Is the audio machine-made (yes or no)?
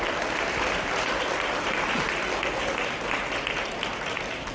no